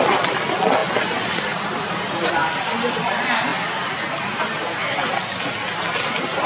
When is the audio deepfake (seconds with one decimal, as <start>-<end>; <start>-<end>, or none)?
none